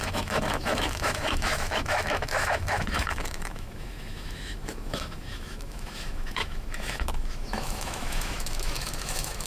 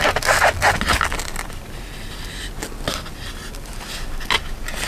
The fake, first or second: first